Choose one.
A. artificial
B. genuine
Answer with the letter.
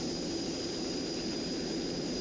A